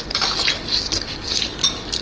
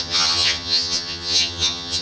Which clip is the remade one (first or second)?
second